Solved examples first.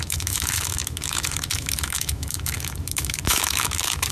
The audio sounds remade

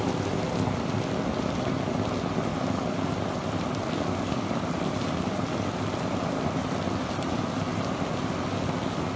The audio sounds recorded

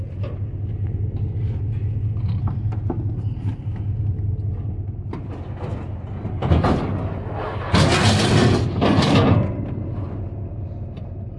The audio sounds recorded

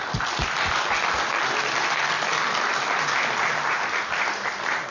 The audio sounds recorded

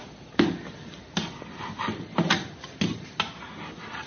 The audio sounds recorded